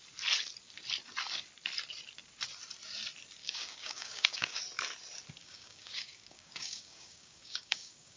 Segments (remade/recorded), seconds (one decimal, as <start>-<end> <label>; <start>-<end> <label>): 0.0-3.4 recorded; 3.4-4.6 remade; 4.6-5.4 recorded; 5.4-8.2 remade